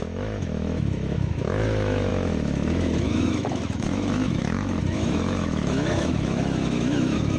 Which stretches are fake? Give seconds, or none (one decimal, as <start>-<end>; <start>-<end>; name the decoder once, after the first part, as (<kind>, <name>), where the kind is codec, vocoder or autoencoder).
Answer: 0.0-7.4 (autoencoder, DAC-VAE)